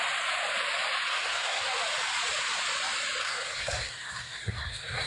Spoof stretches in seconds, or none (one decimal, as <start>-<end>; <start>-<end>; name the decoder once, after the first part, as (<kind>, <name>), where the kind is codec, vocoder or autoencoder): 1.1-1.6 (codec, SNAC); 3.2-5.1